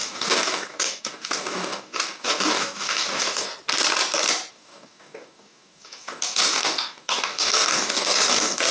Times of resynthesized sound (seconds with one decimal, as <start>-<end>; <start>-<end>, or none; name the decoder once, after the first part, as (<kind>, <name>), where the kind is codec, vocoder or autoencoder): 0.0-3.5 (codec, DAC); 4.5-8.7